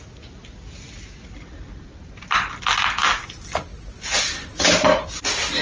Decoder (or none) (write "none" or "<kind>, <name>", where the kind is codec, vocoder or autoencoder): none